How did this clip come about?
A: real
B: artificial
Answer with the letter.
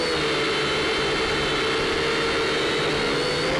A